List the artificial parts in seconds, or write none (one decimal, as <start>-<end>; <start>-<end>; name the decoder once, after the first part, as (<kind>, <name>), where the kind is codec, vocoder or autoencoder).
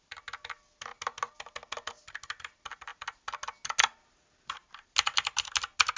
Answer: none